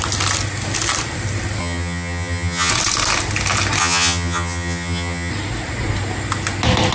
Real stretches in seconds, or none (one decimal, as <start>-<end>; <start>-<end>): 0.0-1.6; 2.7-3.8; 5.3-6.9